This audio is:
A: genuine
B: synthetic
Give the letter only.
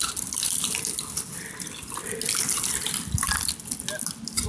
A